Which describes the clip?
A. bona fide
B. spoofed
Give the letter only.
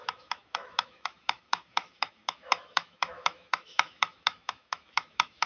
B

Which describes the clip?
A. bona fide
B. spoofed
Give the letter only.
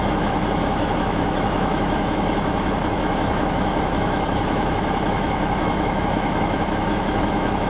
B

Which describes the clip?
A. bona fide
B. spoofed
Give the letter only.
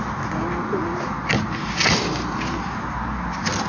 A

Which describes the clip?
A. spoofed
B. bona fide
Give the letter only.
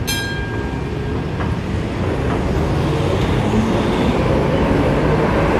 B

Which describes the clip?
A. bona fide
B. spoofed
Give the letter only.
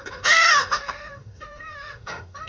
B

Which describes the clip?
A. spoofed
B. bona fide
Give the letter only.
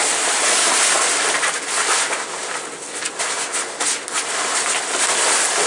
B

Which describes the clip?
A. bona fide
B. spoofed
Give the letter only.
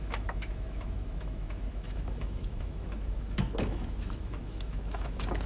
B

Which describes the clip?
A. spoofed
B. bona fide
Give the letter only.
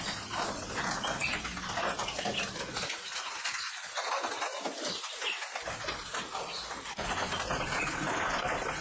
B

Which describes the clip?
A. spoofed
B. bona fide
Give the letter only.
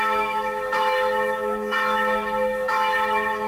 A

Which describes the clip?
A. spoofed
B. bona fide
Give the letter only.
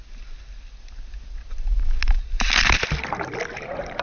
B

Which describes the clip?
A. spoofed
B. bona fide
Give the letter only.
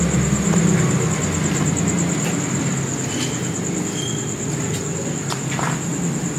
B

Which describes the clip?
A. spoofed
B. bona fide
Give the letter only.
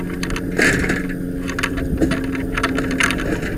B